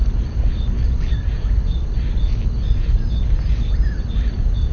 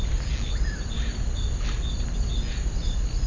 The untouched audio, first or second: second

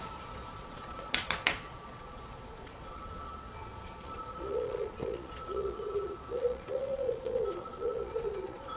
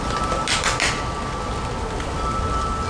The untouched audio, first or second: second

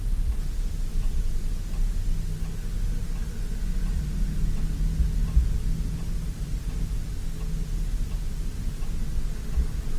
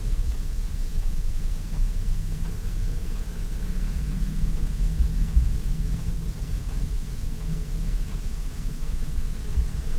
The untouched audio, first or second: first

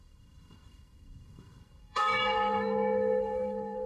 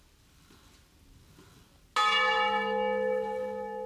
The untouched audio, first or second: second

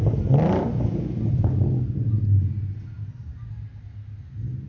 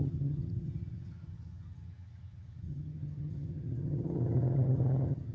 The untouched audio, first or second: first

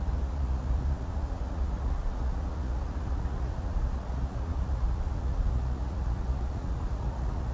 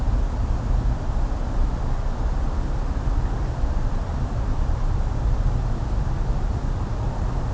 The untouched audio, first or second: second